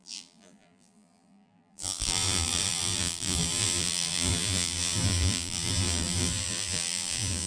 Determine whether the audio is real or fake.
fake